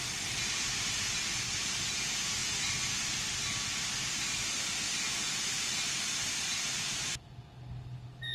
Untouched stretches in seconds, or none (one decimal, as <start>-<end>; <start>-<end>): 0.0-8.3